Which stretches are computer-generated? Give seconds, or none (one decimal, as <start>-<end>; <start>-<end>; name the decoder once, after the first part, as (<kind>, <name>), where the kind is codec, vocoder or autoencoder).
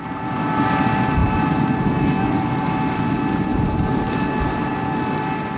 1.2-1.7 (vocoder, BigVGAN v2); 3.5-4.8